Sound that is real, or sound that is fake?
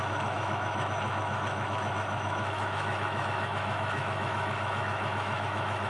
fake